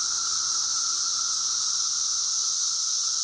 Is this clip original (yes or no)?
yes